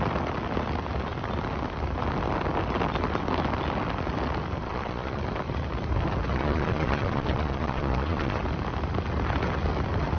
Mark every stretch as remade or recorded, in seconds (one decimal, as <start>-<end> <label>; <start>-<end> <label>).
0.0-4.6 recorded; 4.6-5.2 remade; 5.2-6.3 recorded; 6.3-8.4 remade; 8.4-10.2 recorded